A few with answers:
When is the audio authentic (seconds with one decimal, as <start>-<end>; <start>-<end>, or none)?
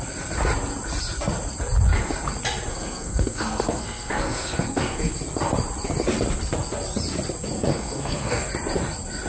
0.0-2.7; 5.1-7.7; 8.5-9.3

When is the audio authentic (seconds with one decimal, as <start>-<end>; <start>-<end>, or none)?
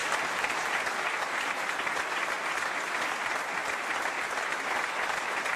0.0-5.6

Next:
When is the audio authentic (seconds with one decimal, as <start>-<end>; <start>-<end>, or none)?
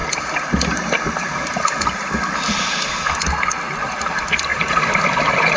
0.0-5.6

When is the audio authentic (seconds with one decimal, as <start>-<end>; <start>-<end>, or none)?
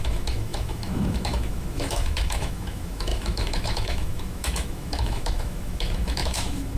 none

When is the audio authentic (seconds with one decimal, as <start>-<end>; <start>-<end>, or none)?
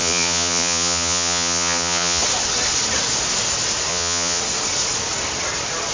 2.2-3.9; 4.4-5.9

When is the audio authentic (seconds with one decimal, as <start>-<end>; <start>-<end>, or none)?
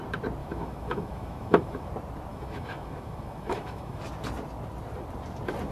0.0-0.4; 1.9-2.3; 4.0-5.7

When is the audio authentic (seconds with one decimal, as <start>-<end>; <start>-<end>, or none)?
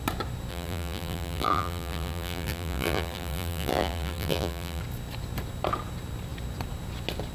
0.0-0.5; 4.8-7.3